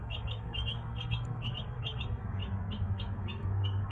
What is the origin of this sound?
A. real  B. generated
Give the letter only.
B